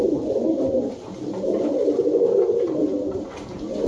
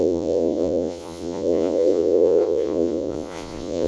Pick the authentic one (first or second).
first